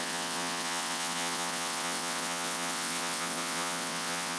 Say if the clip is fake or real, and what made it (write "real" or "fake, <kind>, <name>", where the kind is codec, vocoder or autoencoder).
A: fake, vocoder, WaveNeXt